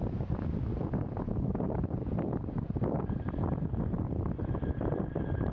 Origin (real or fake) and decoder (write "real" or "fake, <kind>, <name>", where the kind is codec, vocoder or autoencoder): real